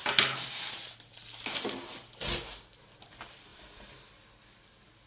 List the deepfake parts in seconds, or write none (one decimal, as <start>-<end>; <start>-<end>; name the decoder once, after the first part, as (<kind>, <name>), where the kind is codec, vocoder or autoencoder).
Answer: none